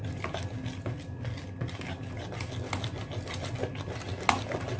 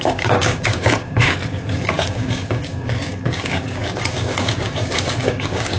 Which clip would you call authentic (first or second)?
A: first